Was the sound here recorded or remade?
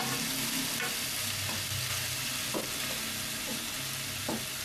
recorded